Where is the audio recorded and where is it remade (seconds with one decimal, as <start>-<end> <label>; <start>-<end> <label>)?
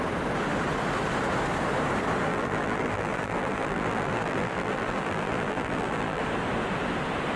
0.0-2.3 recorded; 2.3-6.2 remade; 6.2-7.4 recorded